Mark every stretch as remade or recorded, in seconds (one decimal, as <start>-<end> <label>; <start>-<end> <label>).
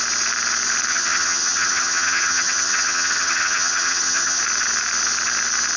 0.0-0.9 recorded; 0.9-4.4 remade; 4.4-5.8 recorded